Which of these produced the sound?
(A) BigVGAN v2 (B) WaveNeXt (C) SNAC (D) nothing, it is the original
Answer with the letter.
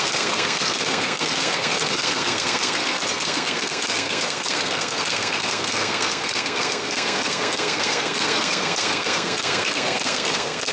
C